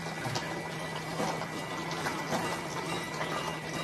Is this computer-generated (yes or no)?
no